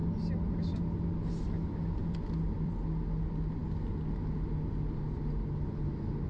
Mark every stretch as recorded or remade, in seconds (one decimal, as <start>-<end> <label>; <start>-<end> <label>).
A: 0.0-2.0 recorded; 2.0-2.7 remade; 2.7-6.3 recorded